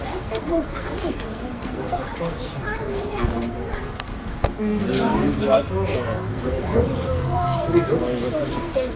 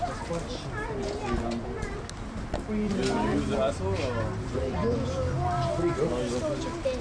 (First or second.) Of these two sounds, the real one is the second